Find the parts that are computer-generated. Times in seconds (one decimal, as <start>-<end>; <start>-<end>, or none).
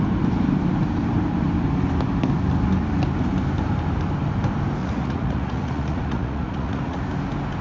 4.8-7.0